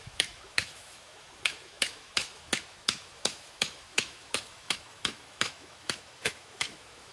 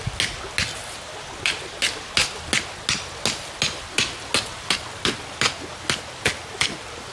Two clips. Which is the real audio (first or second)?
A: second